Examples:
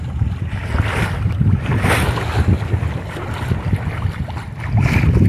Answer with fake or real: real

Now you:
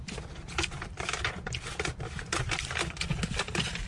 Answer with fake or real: real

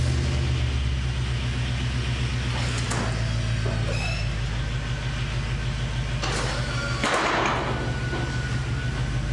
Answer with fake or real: real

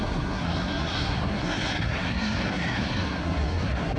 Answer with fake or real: fake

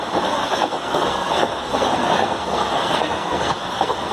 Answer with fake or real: fake